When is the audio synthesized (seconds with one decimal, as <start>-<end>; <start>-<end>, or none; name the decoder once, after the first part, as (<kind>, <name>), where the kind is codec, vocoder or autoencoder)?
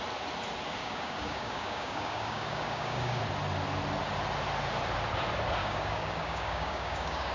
0.8-3.2 (codec, DAC); 5.6-7.3